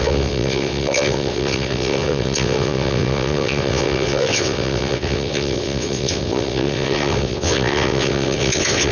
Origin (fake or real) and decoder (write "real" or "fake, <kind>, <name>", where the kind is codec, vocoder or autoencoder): fake, vocoder, WaveNeXt